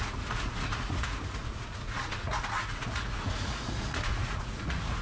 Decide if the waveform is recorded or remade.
remade